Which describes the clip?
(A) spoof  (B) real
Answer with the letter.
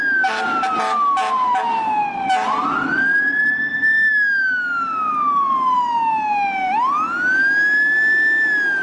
B